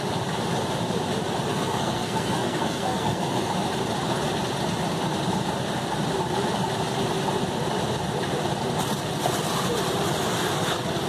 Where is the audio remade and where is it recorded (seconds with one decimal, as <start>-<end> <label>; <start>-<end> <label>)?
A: 0.0-1.5 recorded; 1.5-3.5 remade; 3.5-11.1 recorded